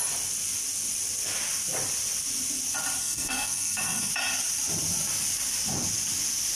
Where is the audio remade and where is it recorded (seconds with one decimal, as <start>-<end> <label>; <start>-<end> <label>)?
0.0-3.0 recorded; 3.0-4.1 remade; 4.1-6.6 recorded